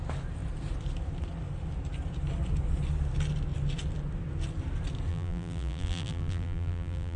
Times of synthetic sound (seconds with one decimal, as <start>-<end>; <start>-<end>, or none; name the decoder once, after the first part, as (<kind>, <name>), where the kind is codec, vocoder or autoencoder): 5.1-7.2 (vocoder, BigVGAN v2)